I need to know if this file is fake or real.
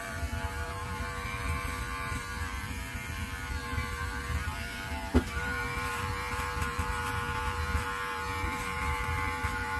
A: fake